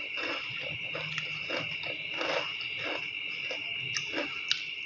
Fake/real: real